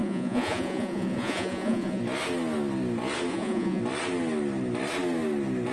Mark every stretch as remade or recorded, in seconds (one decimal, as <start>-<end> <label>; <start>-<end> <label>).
0.0-2.0 remade; 2.0-3.3 recorded; 3.3-3.8 remade; 3.8-5.7 recorded